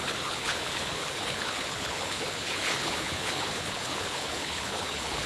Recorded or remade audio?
remade